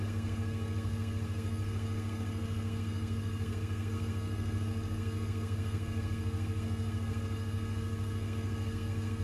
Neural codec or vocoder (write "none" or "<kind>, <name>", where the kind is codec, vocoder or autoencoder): codec, SNAC